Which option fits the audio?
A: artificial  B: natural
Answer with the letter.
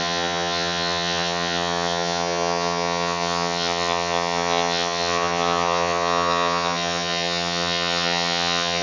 A